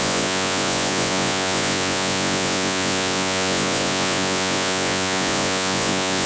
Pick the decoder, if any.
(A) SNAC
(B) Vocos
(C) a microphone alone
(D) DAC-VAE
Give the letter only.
B